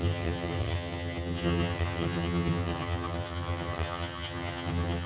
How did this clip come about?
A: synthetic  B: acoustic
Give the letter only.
A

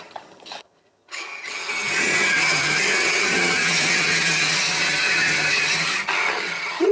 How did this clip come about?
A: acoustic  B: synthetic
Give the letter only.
B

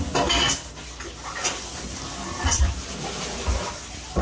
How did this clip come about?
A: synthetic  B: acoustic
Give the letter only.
B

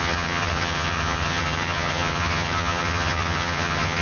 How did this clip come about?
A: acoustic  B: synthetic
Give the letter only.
B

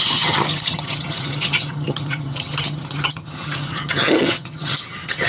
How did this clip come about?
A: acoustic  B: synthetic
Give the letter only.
B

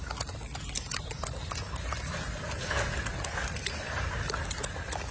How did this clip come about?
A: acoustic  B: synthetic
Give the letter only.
A